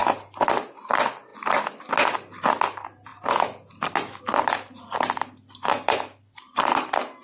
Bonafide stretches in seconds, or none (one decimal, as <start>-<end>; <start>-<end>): 0.0-7.2